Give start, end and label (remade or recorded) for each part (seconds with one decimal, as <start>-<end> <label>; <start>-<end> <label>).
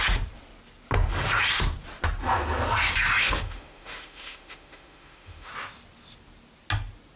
0.0-3.2 recorded; 3.2-5.5 remade; 5.5-7.2 recorded